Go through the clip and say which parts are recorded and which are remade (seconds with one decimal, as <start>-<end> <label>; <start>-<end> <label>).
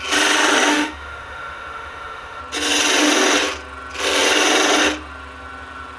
0.0-0.7 recorded; 0.7-2.4 remade; 2.4-6.0 recorded